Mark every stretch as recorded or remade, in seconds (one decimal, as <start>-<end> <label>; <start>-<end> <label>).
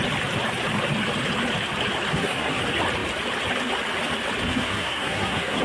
0.0-2.1 recorded; 2.1-2.6 remade; 2.6-4.5 recorded; 4.5-5.6 remade